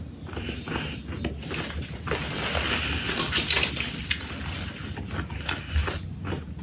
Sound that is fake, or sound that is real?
real